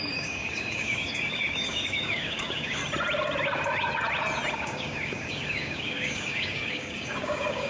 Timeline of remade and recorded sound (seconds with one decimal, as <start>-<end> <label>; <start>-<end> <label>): 0.0-2.8 remade; 2.8-4.5 recorded; 4.5-7.7 remade